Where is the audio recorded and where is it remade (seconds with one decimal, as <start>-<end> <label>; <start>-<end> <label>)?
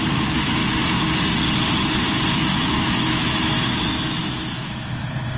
0.0-0.6 remade; 0.6-2.3 recorded; 2.3-5.4 remade